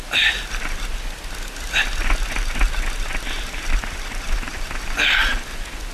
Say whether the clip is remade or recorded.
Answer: recorded